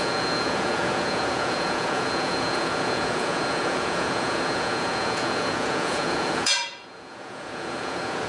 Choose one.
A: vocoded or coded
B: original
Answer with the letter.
A